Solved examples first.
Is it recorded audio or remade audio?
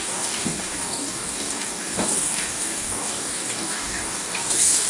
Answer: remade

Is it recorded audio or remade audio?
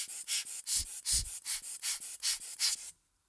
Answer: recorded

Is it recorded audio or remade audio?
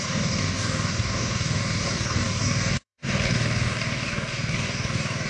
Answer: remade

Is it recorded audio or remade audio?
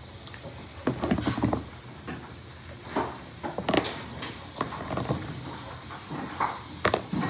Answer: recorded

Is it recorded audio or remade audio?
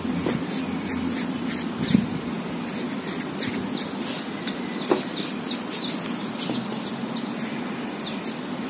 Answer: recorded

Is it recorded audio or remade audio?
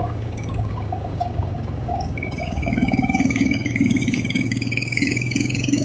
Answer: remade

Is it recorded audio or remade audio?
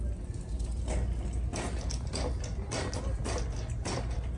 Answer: recorded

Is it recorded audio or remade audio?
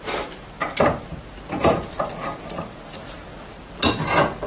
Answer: recorded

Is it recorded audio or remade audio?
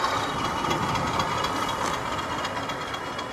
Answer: recorded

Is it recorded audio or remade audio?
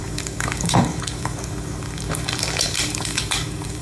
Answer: remade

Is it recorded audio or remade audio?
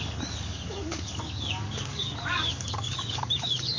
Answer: remade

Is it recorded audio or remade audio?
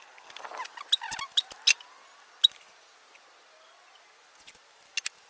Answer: recorded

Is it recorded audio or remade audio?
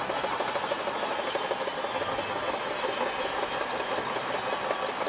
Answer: recorded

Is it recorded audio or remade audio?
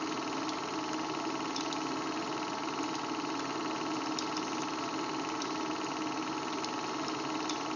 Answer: recorded